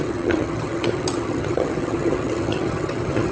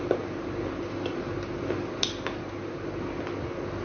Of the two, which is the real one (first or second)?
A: second